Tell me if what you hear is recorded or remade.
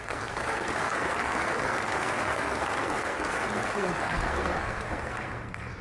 remade